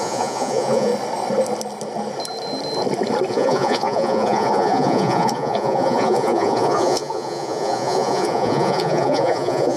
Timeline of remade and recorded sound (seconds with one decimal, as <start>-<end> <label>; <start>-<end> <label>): 0.0-0.9 remade; 0.9-3.3 recorded; 3.3-9.8 remade